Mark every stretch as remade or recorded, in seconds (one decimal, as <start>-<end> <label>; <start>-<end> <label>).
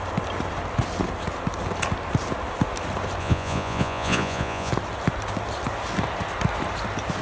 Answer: 0.0-3.2 recorded; 3.2-4.7 remade; 4.7-7.2 recorded